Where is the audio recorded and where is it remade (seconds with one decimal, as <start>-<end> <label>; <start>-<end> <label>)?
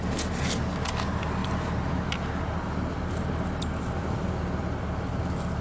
0.0-5.6 recorded